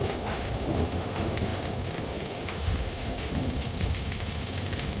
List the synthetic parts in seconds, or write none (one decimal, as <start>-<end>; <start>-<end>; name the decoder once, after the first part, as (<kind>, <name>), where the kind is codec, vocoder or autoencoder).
0.0-5.0 (autoencoder, DAC-VAE)